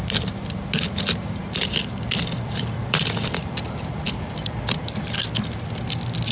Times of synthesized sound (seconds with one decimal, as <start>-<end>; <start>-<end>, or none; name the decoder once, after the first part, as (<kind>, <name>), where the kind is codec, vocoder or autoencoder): 1.4-5.2 (vocoder, BigVGAN v2)